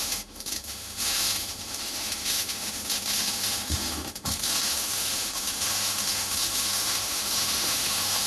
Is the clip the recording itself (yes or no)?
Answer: no